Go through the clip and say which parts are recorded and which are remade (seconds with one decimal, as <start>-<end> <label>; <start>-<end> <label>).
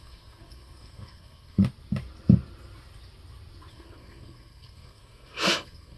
0.0-1.6 remade; 1.6-3.7 recorded; 3.7-6.0 remade